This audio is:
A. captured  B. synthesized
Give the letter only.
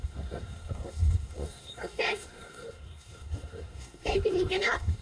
B